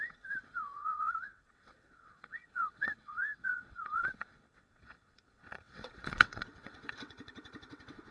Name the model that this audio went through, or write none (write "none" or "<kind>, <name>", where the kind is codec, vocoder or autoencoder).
vocoder, WaveNeXt